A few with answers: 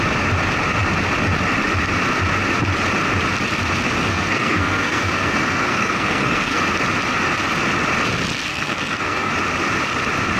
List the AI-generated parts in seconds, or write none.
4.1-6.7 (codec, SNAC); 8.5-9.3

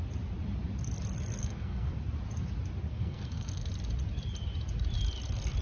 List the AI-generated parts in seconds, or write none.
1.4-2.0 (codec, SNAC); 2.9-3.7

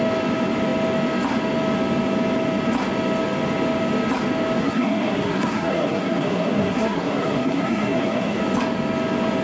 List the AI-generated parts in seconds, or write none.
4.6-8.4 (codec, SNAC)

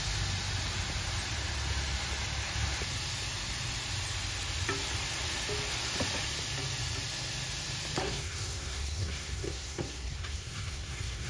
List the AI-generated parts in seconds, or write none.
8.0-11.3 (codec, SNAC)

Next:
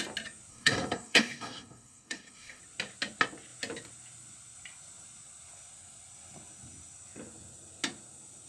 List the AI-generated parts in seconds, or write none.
0.5-2.6 (codec, SNAC)

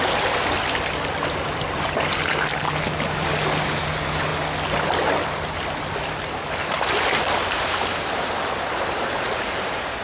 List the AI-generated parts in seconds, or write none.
none